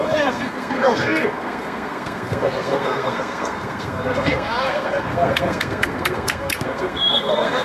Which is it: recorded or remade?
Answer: remade